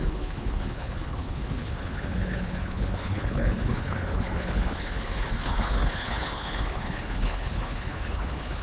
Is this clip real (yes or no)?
no